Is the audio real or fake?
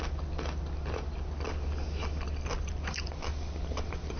real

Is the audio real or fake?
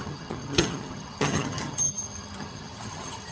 fake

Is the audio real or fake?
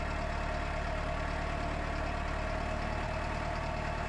real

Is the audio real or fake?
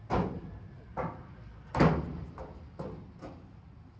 real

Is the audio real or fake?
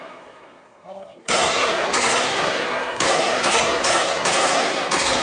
fake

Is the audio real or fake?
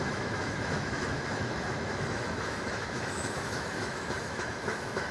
fake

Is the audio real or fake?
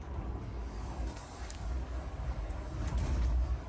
fake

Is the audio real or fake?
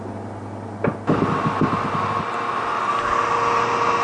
real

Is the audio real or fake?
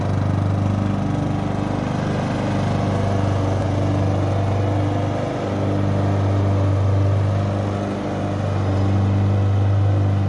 real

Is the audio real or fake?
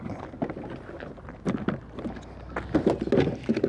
real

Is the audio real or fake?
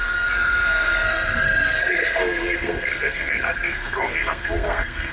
fake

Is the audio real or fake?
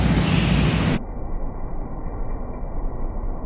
real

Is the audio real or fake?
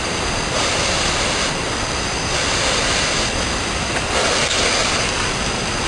fake